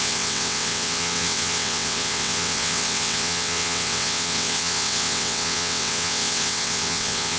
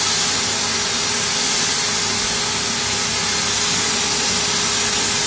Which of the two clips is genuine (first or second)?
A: second